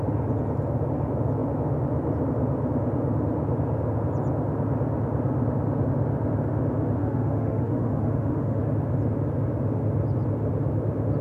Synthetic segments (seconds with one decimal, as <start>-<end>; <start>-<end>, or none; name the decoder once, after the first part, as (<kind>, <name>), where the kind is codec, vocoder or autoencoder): 7.0-8.6 (autoencoder, DAC-VAE)